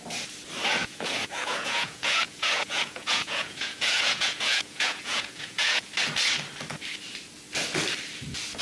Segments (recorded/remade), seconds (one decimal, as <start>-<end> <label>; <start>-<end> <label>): 0.0-0.8 recorded; 0.8-5.9 remade; 5.9-8.6 recorded